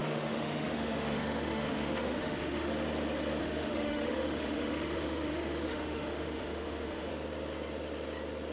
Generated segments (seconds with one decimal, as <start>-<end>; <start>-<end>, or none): 0.0-2.7; 3.4-7.1

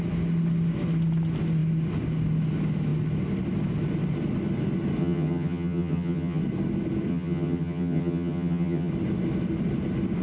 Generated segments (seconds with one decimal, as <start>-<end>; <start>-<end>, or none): 5.0-6.4; 7.1-8.9